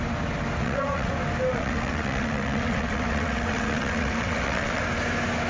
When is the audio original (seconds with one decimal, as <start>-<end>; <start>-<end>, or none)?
0.0-0.6; 1.1-1.5; 4.8-5.5